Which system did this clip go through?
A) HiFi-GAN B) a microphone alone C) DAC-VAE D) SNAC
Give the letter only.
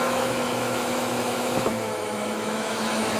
C